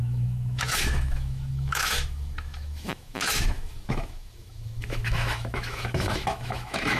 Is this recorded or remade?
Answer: remade